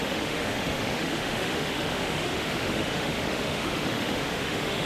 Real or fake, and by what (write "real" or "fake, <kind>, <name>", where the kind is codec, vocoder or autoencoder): fake, autoencoder, DAC-VAE